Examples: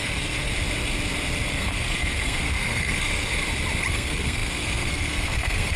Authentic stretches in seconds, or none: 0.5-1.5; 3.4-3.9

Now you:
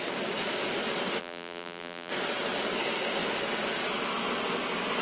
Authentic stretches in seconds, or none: 0.0-1.2; 2.1-5.0

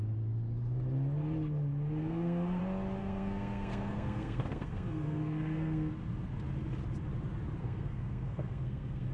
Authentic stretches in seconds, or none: 0.0-2.0; 2.6-3.0; 5.9-7.6

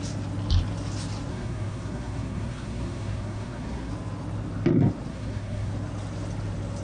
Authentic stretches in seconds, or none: 0.0-1.3; 3.9-5.1; 5.7-6.8

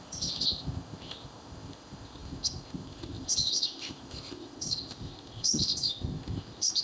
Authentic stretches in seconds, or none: none